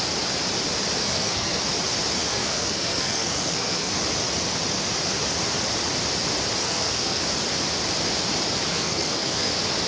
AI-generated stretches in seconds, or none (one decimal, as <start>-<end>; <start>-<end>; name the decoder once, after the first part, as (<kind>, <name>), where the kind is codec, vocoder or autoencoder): 1.0-1.6 (codec, SNAC); 2.3-4.0; 6.6-7.2; 8.7-9.5